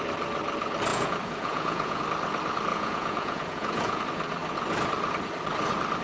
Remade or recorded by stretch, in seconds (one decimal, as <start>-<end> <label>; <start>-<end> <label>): 0.0-0.9 recorded; 0.9-2.0 remade; 2.0-2.7 recorded; 2.7-4.0 remade; 4.0-6.0 recorded